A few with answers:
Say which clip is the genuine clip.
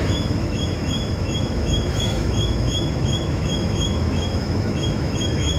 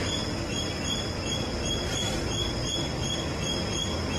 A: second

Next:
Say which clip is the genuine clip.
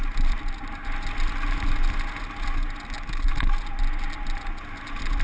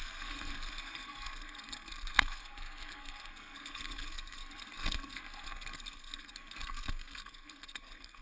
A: first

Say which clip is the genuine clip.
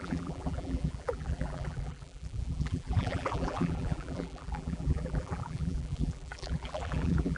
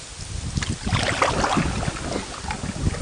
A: second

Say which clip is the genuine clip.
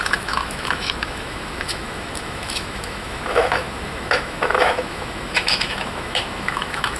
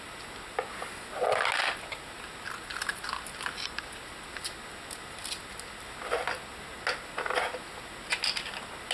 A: second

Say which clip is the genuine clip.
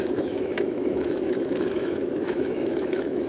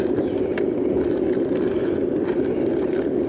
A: second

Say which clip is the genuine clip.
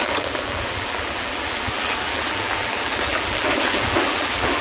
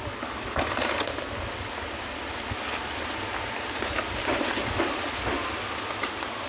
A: second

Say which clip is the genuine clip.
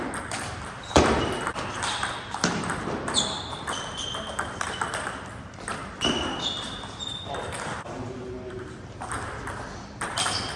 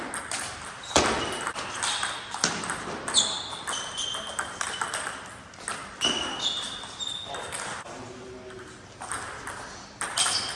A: second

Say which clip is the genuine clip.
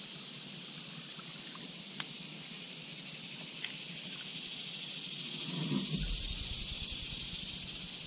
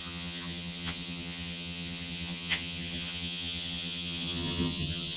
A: first